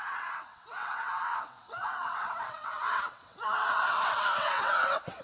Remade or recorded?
remade